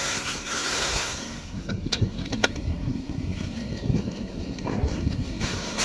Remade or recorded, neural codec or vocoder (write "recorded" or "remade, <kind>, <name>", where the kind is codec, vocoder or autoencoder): remade, codec, SNAC